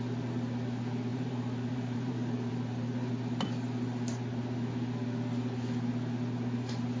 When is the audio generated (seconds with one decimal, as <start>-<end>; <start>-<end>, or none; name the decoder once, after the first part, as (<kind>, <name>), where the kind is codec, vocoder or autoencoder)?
1.1-3.1 (vocoder, BigVGAN v2)